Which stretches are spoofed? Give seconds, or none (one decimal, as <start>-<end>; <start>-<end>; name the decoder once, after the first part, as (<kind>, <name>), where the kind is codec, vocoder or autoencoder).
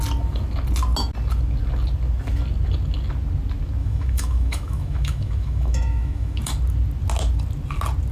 3.8-6.4 (autoencoder, DAC-VAE)